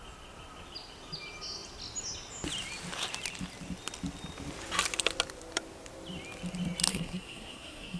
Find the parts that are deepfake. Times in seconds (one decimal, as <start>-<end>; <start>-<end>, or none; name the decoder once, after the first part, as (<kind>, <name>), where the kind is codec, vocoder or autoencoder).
6.9-8.0 (codec, SNAC)